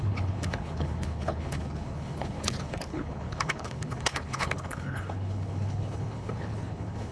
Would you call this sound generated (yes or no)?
yes